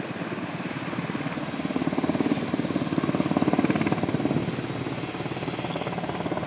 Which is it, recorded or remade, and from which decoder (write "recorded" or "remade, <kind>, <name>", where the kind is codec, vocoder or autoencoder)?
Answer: recorded